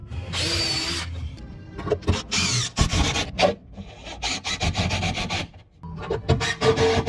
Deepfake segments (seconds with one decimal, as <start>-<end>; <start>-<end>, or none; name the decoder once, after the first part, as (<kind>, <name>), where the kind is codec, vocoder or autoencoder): none